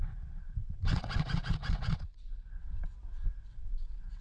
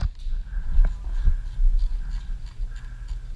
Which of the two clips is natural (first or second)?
second